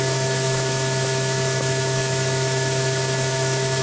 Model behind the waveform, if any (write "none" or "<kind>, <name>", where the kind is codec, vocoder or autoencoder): autoencoder, DAC-VAE